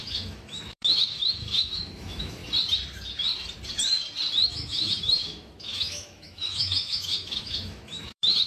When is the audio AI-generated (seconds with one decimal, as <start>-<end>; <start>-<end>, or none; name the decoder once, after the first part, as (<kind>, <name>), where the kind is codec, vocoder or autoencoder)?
0.0-2.4 (autoencoder, DAC-VAE); 4.5-8.5